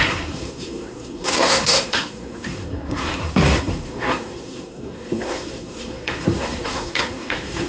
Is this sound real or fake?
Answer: fake